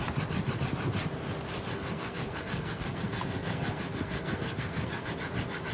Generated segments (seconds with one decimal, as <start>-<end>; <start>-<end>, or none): 1.7-5.1